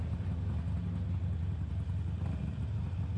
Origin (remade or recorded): recorded